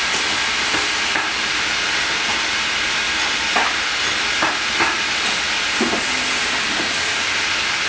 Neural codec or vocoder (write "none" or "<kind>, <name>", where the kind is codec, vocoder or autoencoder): vocoder, BigVGAN v2